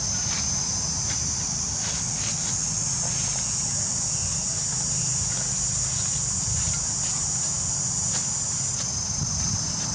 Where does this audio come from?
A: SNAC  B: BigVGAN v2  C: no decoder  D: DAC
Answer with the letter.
C